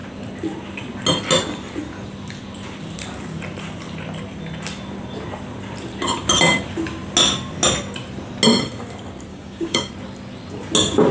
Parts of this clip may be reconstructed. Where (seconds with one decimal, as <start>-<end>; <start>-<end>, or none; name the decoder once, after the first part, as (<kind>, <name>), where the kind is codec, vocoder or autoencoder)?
9.3-9.9 (codec, DAC)